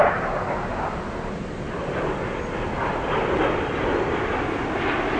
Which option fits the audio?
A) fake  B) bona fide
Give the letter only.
B